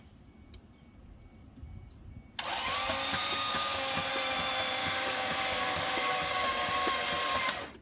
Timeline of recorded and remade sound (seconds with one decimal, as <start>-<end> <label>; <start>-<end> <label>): 0.0-3.1 recorded; 3.1-4.1 remade; 4.1-4.8 recorded; 4.8-6.7 remade; 6.7-7.8 recorded